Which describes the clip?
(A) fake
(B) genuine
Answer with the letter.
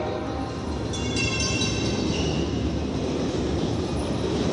A